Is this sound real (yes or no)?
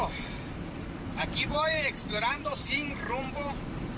no